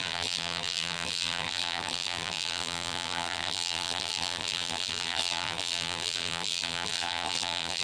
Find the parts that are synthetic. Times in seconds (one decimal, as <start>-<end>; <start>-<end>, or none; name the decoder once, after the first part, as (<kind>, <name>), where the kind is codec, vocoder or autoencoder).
0.0-7.8 (vocoder, BigVGAN v2)